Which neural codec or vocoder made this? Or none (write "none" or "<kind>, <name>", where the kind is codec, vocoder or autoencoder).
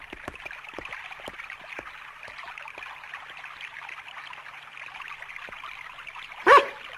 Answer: none